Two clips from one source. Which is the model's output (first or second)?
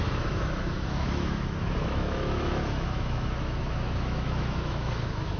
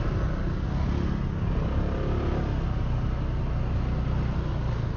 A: first